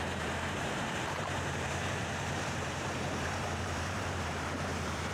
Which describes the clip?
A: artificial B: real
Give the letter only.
A